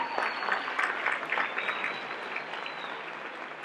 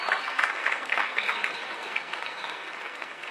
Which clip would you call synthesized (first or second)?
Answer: second